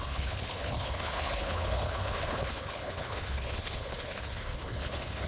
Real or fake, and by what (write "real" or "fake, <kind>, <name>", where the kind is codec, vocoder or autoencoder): fake, codec, HILCodec